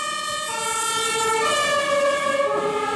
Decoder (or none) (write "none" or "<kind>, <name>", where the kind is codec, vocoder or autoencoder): none